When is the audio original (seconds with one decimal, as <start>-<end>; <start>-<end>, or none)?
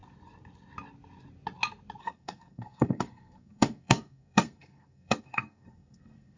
0.0-2.0